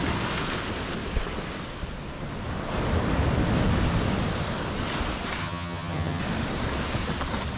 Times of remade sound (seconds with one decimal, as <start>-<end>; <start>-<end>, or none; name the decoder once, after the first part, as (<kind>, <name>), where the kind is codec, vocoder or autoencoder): 5.4-6.2 (vocoder, HiFi-GAN)